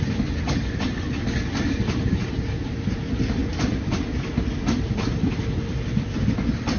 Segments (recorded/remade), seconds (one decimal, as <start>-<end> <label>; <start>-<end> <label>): 0.0-6.8 recorded